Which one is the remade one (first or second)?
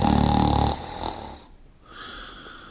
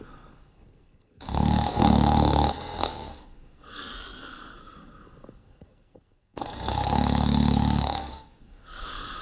second